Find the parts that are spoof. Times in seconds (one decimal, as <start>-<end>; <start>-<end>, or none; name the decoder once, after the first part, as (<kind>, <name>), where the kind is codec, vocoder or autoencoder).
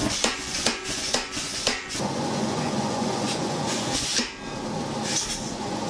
0.0-4.1 (vocoder, Vocos); 5.4-5.9